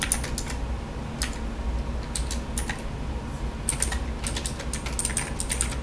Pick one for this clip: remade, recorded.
recorded